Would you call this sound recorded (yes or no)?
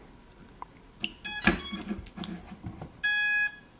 yes